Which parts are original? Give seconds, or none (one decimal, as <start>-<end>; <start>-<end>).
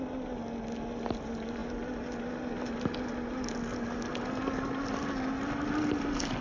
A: 0.0-6.4